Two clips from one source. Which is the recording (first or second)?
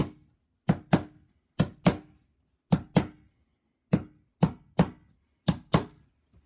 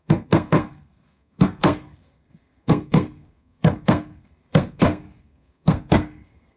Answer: first